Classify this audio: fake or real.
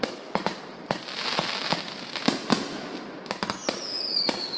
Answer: real